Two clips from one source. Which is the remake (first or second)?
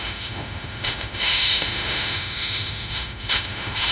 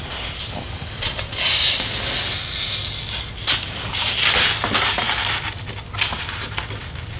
first